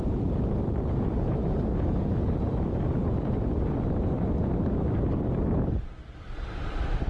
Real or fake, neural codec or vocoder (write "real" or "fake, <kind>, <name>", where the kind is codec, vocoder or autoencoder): fake, vocoder, BigVGAN v2